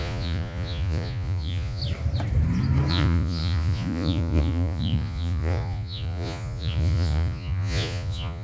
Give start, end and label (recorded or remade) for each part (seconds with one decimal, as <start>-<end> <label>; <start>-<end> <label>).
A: 0.0-1.8 remade; 1.8-2.9 recorded; 2.9-8.4 remade